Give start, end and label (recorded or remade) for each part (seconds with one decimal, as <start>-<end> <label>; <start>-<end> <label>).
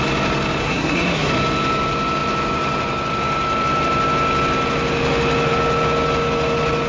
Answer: 0.0-0.6 recorded; 0.6-1.3 remade; 1.3-6.9 recorded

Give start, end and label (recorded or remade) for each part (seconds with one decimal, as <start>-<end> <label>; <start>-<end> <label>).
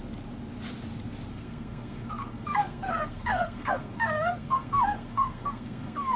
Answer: 0.0-1.3 recorded; 1.3-6.2 remade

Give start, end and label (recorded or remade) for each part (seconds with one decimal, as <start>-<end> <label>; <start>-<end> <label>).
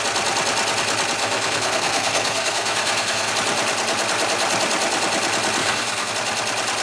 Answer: 0.0-1.2 recorded; 1.2-3.3 remade; 3.3-5.6 recorded; 5.6-6.1 remade; 6.1-6.8 recorded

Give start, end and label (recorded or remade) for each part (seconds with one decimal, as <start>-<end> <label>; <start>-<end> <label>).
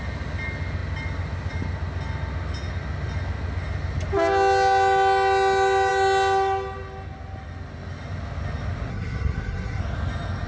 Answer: 0.0-8.9 recorded; 8.9-9.8 remade; 9.8-10.5 recorded